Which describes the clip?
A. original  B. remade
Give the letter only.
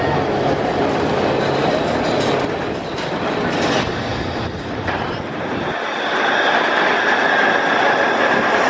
A